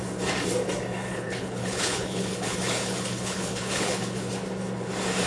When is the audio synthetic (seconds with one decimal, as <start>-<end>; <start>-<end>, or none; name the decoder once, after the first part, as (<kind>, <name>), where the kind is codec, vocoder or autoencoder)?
1.1-4.3 (codec, HILCodec)